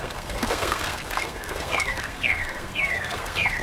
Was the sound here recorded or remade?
remade